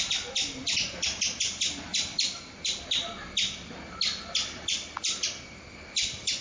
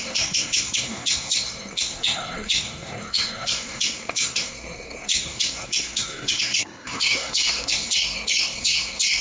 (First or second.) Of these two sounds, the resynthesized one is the second